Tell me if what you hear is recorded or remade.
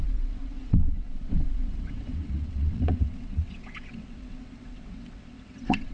remade